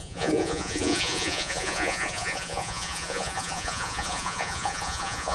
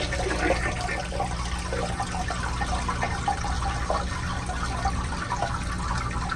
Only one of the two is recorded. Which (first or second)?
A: second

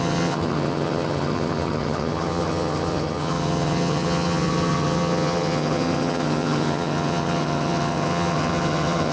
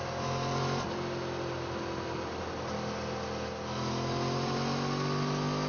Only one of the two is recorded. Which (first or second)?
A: second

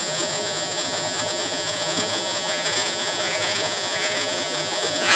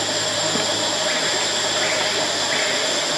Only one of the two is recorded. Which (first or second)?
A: second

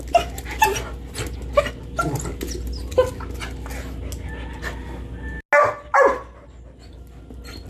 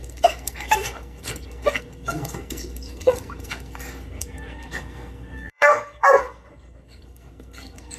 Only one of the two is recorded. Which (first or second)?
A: first